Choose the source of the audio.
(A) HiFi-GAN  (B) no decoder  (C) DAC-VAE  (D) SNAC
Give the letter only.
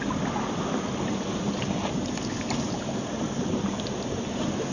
B